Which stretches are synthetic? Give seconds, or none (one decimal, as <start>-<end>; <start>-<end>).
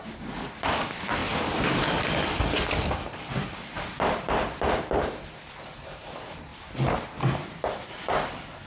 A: 0.0-6.5; 7.2-8.7